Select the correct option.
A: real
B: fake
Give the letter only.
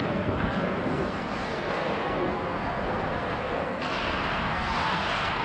B